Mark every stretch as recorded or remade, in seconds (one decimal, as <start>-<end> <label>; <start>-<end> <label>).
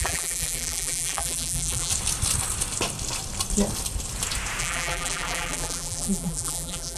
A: 0.0-1.9 remade; 1.9-4.6 recorded; 4.6-7.0 remade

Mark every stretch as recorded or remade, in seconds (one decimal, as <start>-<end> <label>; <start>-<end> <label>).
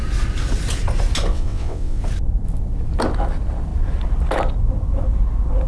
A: 0.0-1.3 recorded; 1.3-2.0 remade; 2.0-5.7 recorded